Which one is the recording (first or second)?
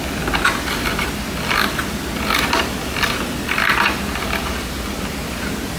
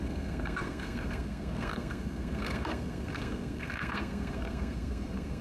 first